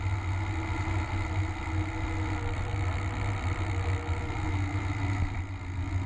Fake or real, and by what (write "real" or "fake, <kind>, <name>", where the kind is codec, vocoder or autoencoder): real